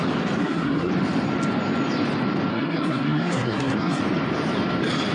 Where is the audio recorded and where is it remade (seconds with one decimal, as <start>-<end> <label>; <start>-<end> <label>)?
0.0-0.4 recorded; 0.4-0.9 remade; 0.9-2.5 recorded; 2.5-4.0 remade; 4.0-5.1 recorded